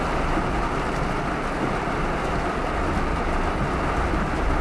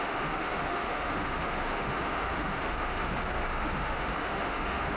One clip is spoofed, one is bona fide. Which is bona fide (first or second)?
first